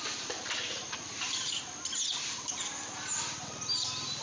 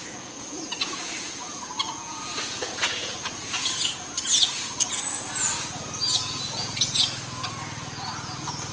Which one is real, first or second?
first